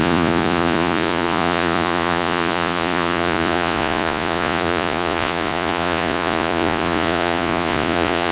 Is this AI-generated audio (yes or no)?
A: yes